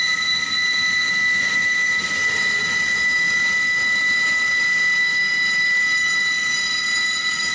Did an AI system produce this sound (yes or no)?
no